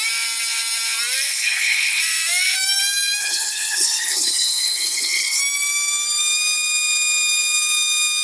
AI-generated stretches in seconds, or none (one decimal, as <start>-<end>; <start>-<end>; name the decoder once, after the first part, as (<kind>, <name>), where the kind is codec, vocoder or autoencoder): 1.3-2.0 (codec, HILCodec); 3.2-5.4